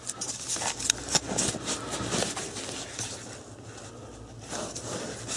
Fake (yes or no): no